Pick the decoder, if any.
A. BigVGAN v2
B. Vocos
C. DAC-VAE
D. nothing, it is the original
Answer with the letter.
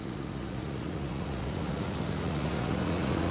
B